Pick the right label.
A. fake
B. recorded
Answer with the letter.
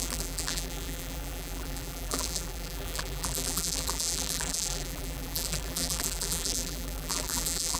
A